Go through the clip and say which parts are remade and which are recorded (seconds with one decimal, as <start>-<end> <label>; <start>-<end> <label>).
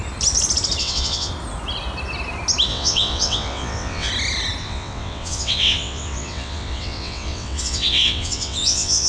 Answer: 0.0-0.8 recorded; 0.8-1.3 remade; 1.3-2.7 recorded; 2.7-4.1 remade; 4.1-4.6 recorded; 4.6-9.1 remade